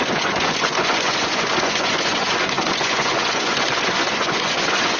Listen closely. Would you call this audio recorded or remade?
remade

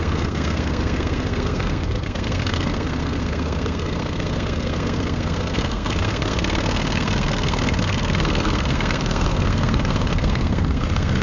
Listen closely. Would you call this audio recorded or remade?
remade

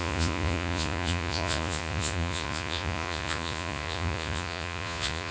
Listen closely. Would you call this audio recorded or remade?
remade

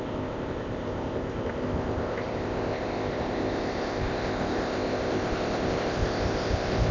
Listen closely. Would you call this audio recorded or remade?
remade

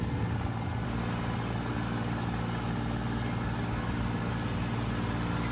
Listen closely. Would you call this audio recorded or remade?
recorded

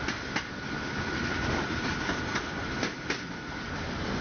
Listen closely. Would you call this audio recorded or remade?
recorded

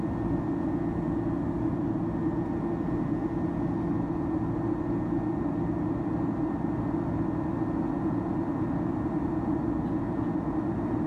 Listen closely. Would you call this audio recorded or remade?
recorded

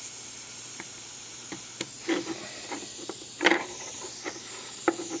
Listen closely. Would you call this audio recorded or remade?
recorded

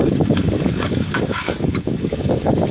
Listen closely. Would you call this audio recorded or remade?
remade